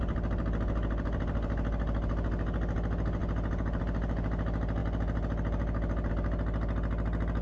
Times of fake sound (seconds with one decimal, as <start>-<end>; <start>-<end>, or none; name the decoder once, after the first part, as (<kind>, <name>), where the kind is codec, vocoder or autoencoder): 4.8-6.1 (vocoder, BigVGAN v2)